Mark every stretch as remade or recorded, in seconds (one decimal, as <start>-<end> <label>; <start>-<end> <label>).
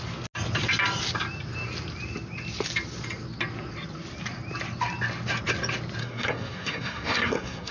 0.0-6.0 recorded; 6.0-7.7 remade